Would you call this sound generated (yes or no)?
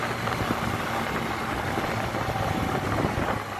no